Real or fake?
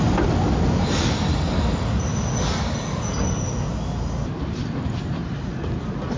real